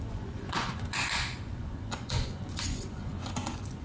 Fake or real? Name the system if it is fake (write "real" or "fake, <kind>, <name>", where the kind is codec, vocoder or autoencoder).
fake, vocoder, Vocos